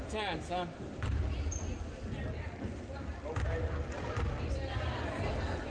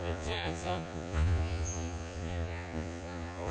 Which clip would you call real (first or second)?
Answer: first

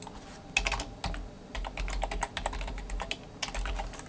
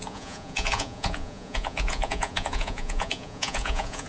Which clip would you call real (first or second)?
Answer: first